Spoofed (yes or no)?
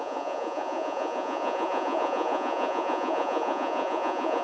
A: yes